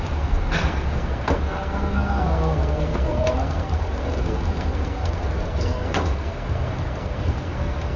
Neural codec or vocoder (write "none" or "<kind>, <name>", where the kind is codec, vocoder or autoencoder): codec, SNAC